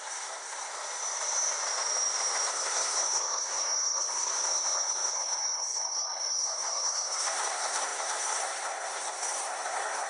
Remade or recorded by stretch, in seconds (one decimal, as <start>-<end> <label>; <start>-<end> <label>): 0.0-0.7 remade; 0.7-2.5 recorded; 2.5-10.1 remade